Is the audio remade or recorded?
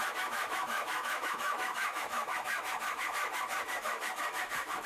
remade